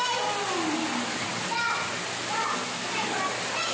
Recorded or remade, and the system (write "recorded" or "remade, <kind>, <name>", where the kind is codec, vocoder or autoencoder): recorded